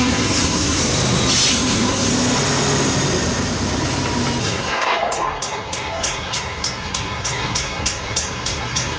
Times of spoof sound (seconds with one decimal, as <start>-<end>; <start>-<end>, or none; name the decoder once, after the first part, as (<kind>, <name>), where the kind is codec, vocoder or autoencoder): 0.0-0.8 (codec, SNAC); 1.5-2.1; 4.4-9.0